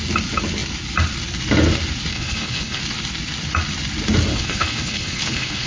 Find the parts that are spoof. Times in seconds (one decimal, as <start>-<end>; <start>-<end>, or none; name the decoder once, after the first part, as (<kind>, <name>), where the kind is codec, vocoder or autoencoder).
2.1-2.8 (codec, HILCodec); 4.3-5.7